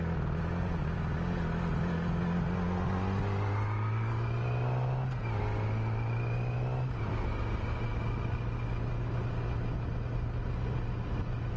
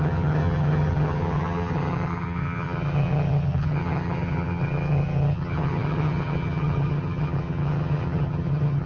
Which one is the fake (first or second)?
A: second